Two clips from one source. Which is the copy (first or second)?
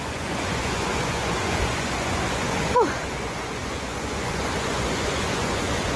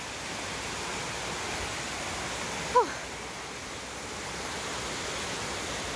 first